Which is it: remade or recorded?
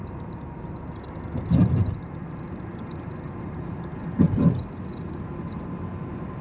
recorded